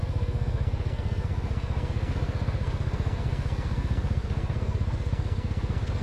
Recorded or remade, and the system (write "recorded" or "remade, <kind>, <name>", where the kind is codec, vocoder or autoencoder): remade, codec, SNAC